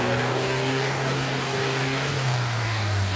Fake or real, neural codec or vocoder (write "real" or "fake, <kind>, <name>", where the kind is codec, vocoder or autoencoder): fake, codec, DAC